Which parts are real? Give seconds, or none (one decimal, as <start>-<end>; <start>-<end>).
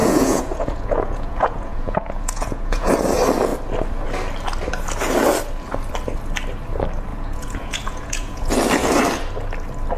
2.9-7.1; 8.5-10.0